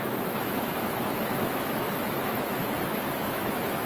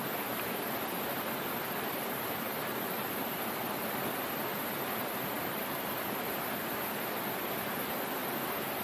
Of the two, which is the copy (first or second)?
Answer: first